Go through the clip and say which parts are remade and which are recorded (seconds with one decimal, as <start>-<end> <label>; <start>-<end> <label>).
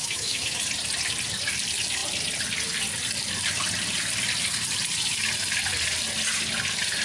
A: 0.0-0.6 remade; 0.6-7.0 recorded